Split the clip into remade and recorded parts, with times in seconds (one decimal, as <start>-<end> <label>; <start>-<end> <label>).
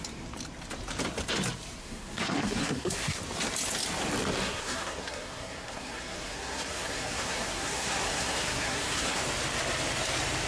0.0-1.8 recorded; 1.8-3.2 remade; 3.2-4.4 recorded; 4.4-9.2 remade; 9.2-10.5 recorded